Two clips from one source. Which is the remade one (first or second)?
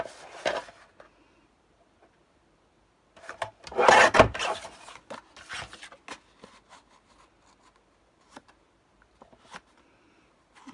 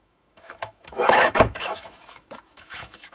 second